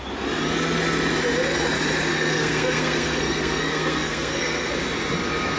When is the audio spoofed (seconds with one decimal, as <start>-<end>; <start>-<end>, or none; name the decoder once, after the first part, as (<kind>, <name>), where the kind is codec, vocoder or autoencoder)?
2.1-4.7 (codec, SNAC)

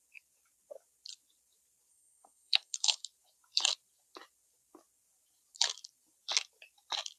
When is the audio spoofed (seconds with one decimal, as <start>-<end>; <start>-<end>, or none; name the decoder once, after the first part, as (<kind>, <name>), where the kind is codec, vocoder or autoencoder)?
1.9-3.0 (codec, SNAC)